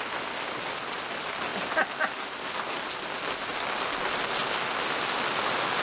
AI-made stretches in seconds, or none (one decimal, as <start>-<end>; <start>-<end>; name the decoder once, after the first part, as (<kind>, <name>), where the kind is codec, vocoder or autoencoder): none